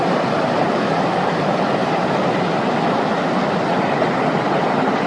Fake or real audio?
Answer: real